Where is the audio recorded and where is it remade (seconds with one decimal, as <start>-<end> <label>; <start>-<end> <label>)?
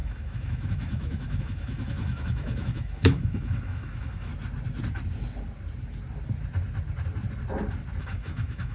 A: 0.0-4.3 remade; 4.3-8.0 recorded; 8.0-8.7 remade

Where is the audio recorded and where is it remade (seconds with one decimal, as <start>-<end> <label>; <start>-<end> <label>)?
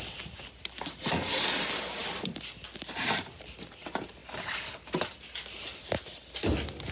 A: 0.0-6.9 recorded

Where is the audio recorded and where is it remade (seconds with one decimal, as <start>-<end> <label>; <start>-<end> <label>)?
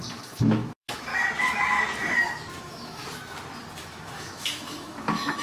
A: 0.0-1.1 remade; 1.1-2.6 recorded; 2.6-3.0 remade; 3.0-3.8 recorded; 3.8-5.4 remade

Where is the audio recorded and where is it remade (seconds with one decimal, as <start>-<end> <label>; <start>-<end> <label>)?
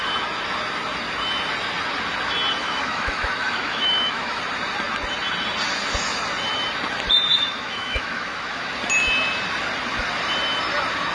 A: 0.0-2.6 recorded; 2.6-4.4 remade; 4.4-7.3 recorded; 7.3-8.7 remade; 8.7-11.1 recorded